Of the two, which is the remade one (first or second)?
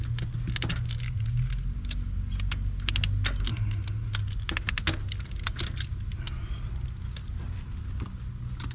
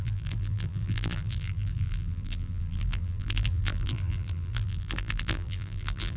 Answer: second